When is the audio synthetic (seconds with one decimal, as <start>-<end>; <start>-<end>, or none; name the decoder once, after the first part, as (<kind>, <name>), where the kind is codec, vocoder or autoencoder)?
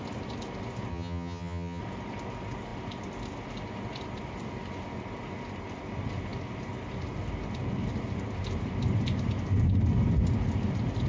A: 0.9-1.8 (vocoder, HiFi-GAN)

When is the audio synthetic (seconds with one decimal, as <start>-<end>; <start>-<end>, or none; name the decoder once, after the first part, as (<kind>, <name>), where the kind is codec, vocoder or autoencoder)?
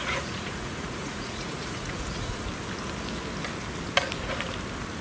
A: 0.0-2.4 (vocoder, Vocos)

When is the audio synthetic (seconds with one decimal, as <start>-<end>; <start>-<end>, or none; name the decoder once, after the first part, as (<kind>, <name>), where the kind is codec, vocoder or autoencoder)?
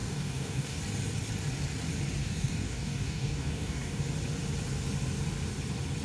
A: 0.0-0.8 (codec, DAC); 2.2-4.0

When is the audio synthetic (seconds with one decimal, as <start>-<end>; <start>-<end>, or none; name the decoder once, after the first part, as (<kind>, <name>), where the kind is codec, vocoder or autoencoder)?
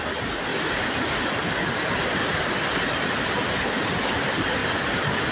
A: none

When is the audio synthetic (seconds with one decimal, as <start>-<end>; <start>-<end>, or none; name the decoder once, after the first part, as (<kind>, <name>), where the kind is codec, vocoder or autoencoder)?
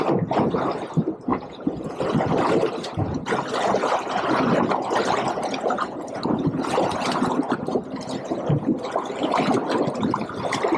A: 1.3-2.0 (vocoder, Vocos)